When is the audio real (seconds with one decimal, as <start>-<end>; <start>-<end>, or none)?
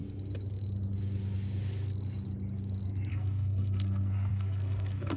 0.0-3.1